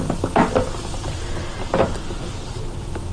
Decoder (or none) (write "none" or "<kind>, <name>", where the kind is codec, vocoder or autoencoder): none